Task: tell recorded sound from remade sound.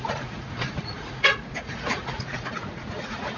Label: remade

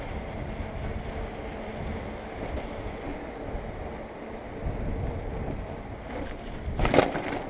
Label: recorded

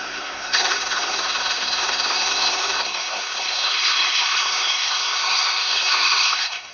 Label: remade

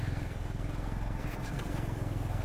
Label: remade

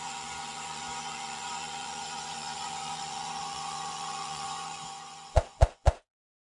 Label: remade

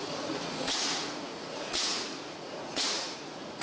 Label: remade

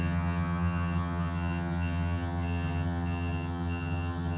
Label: remade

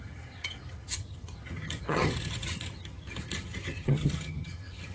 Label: remade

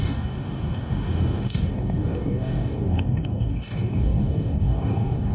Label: remade